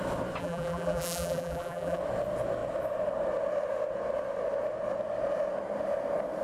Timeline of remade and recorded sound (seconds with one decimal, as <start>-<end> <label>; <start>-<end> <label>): 0.0-0.4 recorded; 0.4-2.0 remade; 2.0-6.4 recorded